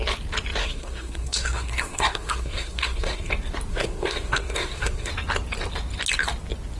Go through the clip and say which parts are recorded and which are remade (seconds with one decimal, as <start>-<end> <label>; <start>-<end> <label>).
0.0-0.6 recorded; 0.6-3.3 remade; 3.3-3.7 recorded; 3.7-5.1 remade; 5.1-6.8 recorded